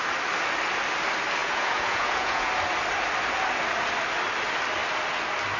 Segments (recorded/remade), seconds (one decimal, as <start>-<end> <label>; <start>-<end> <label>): 0.0-1.4 recorded; 1.4-2.5 remade; 2.5-5.6 recorded